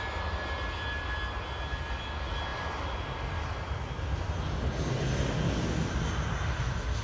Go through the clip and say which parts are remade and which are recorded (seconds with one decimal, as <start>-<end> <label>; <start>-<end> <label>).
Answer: 0.0-2.5 recorded; 2.5-4.2 remade; 4.2-7.0 recorded